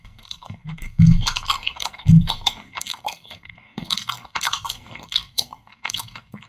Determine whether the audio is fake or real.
fake